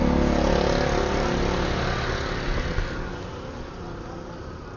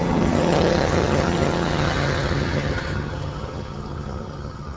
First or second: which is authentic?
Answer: first